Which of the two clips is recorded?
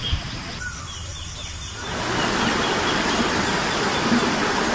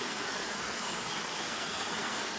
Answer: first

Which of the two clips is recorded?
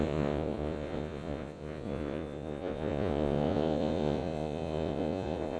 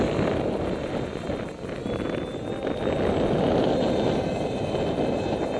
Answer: second